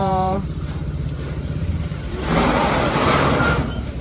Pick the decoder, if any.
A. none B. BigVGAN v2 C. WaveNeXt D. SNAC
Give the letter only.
B